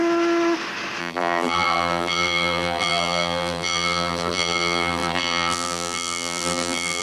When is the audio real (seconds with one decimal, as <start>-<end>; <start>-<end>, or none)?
0.0-1.0